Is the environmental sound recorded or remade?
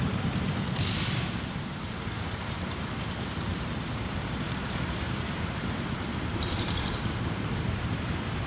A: remade